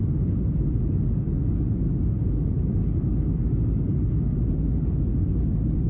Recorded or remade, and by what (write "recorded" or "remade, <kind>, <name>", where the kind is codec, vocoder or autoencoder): recorded